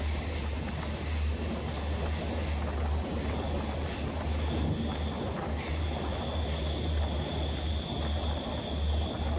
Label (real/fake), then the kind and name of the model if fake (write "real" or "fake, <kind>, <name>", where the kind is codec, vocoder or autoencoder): real